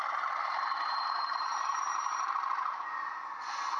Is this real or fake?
real